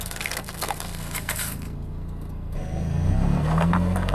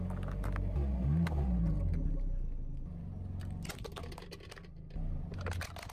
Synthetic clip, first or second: first